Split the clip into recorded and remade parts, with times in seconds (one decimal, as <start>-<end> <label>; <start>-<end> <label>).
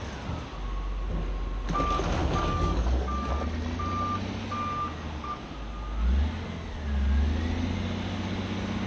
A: 0.0-2.2 recorded; 2.2-3.3 remade; 3.3-8.9 recorded